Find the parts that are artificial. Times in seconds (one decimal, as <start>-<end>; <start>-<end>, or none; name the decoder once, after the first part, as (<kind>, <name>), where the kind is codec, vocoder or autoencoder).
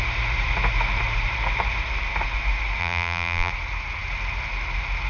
2.8-3.5 (vocoder, BigVGAN v2)